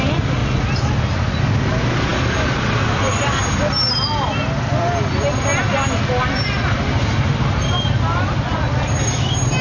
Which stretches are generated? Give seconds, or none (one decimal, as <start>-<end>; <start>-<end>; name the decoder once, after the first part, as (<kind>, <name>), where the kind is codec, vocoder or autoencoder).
none